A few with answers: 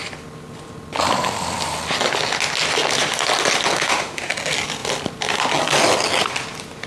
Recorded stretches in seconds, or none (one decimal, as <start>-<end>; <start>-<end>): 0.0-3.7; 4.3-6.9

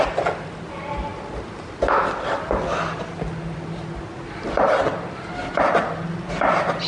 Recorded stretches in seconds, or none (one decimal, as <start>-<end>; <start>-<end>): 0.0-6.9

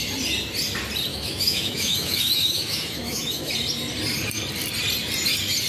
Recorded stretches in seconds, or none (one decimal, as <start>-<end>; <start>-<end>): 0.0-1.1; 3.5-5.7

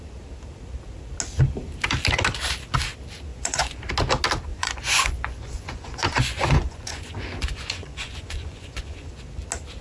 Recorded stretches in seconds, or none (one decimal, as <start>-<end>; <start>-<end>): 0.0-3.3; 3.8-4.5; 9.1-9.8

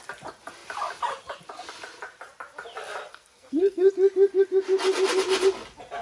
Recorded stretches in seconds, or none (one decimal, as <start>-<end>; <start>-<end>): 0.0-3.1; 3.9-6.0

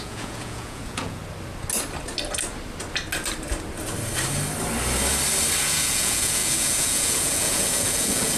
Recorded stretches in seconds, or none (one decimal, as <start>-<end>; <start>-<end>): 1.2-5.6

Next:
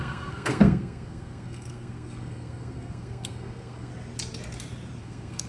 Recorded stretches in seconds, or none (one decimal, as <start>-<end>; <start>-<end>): 3.9-5.0